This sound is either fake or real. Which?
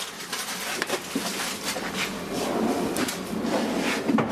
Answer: real